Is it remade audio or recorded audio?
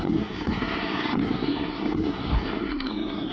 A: remade